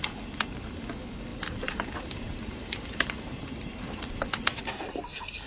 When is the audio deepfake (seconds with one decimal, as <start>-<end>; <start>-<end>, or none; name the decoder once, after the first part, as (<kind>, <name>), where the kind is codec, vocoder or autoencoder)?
1.3-4.2 (vocoder, BigVGAN v2)